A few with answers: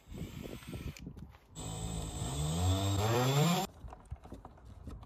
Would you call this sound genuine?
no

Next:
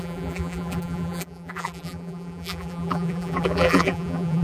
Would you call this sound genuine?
no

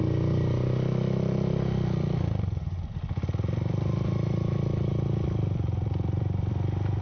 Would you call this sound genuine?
yes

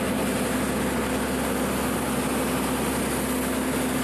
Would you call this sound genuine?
yes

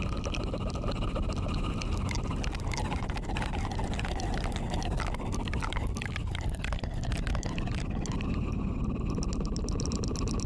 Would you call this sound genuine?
yes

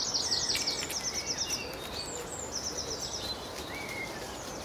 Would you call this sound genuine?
yes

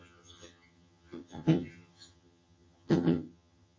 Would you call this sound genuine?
no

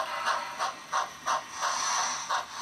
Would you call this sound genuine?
yes